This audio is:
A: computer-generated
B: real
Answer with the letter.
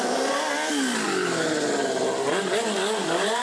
B